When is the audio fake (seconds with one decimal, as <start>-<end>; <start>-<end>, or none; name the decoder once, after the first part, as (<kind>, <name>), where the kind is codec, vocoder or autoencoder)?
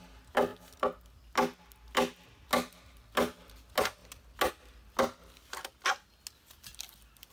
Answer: none